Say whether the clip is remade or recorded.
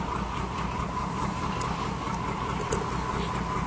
recorded